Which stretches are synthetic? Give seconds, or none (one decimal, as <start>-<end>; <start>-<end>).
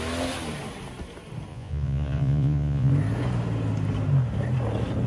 1.5-2.9